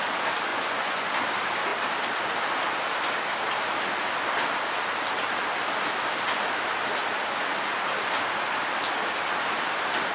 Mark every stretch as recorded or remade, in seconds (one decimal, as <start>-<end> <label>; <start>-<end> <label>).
0.0-0.5 recorded; 0.5-1.1 remade; 1.1-10.1 recorded